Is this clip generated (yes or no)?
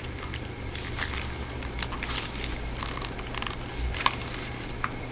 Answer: no